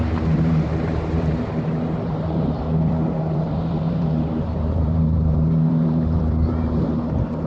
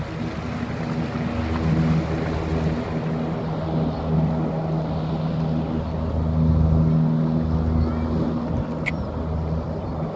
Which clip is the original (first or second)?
second